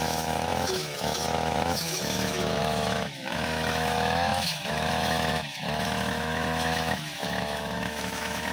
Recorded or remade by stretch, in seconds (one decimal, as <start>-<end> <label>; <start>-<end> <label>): 0.0-8.5 remade